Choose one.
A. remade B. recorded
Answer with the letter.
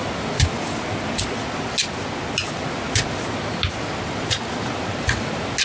B